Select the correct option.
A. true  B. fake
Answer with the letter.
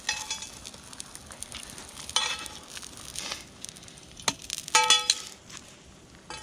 A